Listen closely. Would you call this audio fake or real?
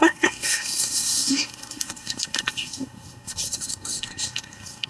fake